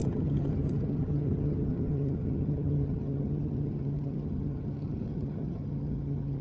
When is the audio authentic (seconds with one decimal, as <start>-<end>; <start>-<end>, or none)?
none